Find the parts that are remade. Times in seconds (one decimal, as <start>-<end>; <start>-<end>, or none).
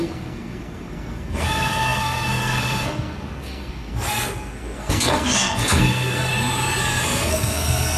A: 0.0-6.3; 6.8-8.0